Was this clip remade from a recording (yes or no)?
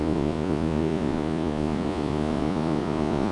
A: yes